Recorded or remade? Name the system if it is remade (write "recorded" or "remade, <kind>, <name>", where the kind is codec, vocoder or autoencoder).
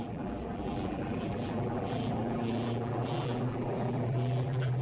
remade, vocoder, BigVGAN v2